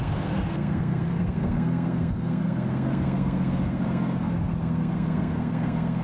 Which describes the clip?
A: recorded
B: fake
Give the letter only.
B